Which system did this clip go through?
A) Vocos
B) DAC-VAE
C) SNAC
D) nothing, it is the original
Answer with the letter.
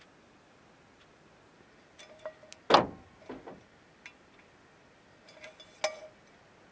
D